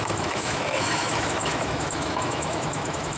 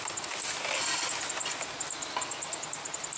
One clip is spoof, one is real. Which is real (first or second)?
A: second